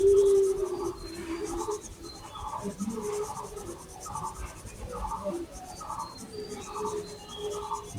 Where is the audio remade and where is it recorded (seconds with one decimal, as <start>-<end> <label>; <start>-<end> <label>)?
0.0-2.0 recorded; 2.0-2.6 remade; 2.6-3.7 recorded; 3.7-6.2 remade; 6.2-8.0 recorded